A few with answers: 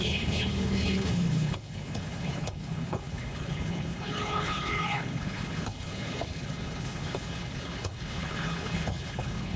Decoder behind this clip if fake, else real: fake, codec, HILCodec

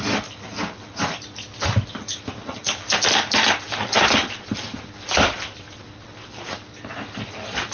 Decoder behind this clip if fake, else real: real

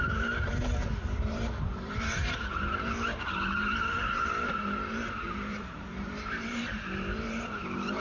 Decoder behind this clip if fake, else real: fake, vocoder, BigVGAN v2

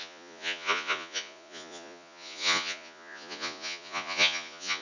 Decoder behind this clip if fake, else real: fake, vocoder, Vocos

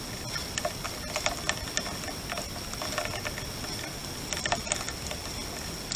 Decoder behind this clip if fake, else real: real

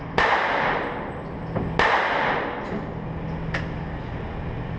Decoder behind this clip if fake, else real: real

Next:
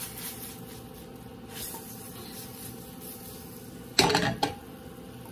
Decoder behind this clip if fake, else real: real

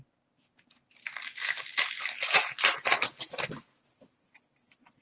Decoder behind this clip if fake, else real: real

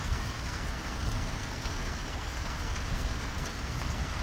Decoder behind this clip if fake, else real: fake, codec, SNAC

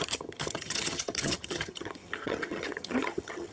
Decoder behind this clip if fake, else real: fake, vocoder, HiFi-GAN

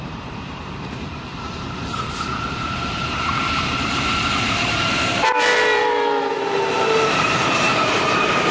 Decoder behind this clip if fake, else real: fake, vocoder, BigVGAN v2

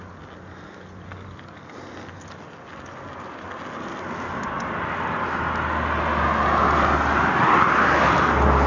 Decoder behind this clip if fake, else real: real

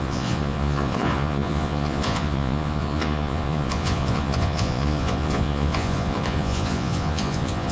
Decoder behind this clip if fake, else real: fake, vocoder, Vocos